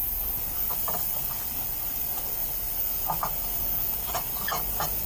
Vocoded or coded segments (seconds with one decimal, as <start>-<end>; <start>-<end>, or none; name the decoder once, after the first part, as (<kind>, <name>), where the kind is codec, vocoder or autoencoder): none